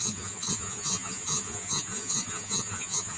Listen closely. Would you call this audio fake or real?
fake